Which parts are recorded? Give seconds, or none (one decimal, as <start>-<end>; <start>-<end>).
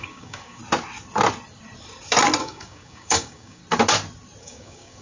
0.6-2.4; 3.6-4.4